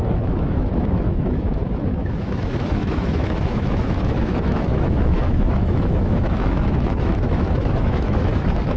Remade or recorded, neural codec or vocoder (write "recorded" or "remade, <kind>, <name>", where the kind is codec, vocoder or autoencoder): remade, autoencoder, DAC-VAE